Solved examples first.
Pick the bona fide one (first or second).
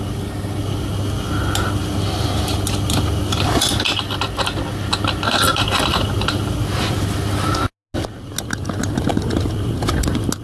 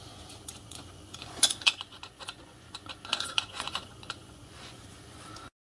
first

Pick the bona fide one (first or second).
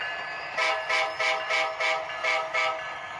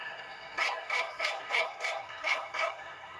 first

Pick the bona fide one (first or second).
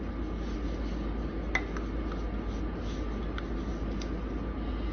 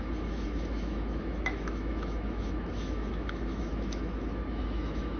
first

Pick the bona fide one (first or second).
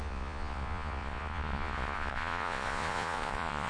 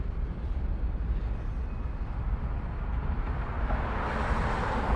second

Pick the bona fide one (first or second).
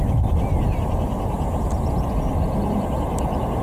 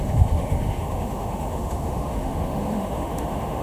first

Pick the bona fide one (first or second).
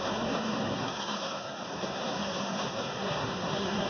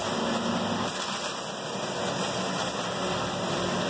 second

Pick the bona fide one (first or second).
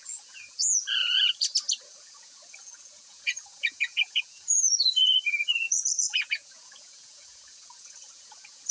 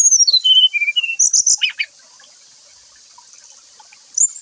second